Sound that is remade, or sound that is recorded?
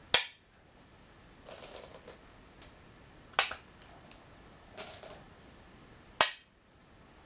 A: recorded